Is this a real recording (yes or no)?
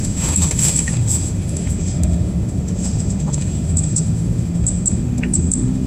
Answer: no